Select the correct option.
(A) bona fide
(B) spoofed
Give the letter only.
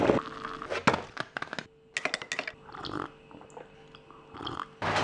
A